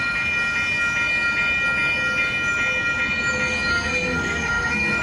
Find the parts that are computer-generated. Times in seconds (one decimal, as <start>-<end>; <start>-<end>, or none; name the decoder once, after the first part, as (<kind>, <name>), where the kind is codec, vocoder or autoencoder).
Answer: 3.7-5.0 (codec, SNAC)